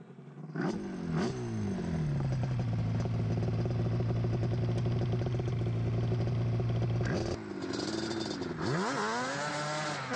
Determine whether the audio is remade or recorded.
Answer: recorded